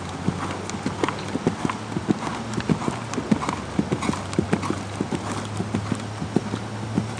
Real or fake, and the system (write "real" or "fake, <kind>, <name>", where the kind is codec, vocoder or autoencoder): real